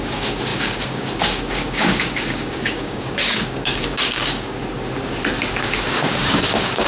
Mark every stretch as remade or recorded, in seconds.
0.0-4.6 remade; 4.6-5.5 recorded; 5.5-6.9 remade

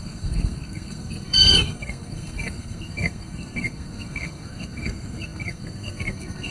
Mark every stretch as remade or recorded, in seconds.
0.0-6.5 remade

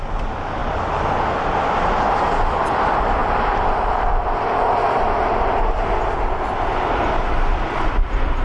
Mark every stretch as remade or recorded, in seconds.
0.0-8.4 recorded

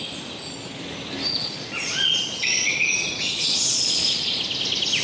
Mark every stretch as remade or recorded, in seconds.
0.0-1.4 recorded; 1.4-4.4 remade; 4.4-5.0 recorded

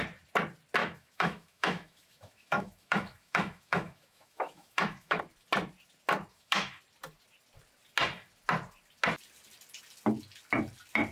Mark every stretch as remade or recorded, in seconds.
0.0-0.8 recorded; 0.8-5.2 remade; 5.2-6.3 recorded; 6.3-6.8 remade; 6.8-11.1 recorded